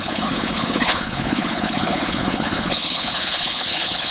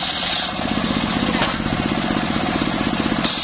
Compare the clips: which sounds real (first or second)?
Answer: second